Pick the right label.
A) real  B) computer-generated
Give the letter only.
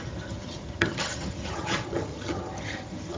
B